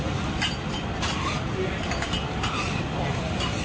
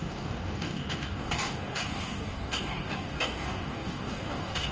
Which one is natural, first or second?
first